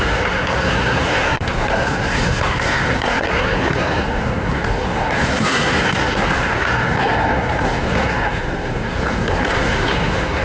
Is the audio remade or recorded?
remade